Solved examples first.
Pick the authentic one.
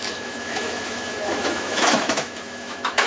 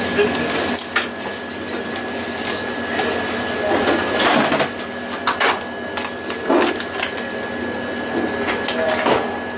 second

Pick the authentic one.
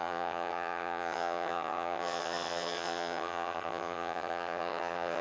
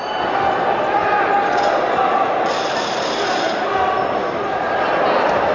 second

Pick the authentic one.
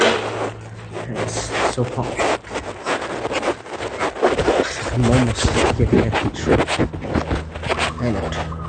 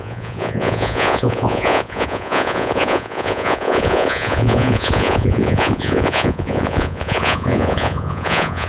first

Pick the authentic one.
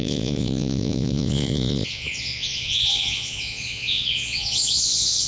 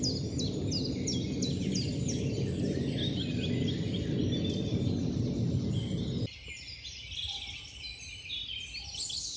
second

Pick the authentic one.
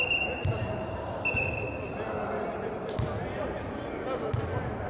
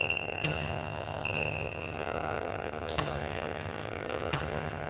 first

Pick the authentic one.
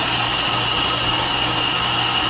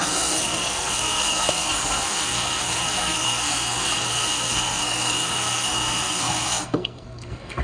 first